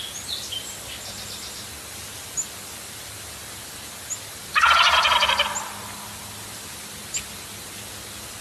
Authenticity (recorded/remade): recorded